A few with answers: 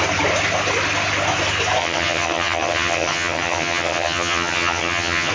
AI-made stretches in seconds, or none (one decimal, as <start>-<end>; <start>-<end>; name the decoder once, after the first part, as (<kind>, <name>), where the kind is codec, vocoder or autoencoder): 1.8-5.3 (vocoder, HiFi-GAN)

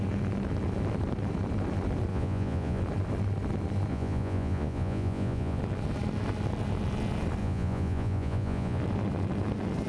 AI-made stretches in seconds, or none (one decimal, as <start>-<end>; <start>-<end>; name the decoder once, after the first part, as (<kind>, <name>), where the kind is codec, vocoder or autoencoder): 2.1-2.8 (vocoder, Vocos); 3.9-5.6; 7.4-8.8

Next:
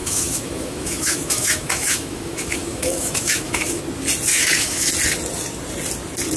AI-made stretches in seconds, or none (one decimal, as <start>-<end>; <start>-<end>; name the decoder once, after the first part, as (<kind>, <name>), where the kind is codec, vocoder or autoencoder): 0.0-3.8 (autoencoder, DAC-VAE); 4.3-4.9